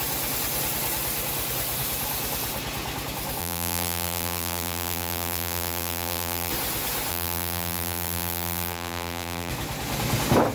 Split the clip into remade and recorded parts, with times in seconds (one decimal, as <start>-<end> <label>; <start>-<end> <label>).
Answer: 0.0-3.4 recorded; 3.4-6.5 remade; 6.5-7.1 recorded; 7.1-9.5 remade; 9.5-10.5 recorded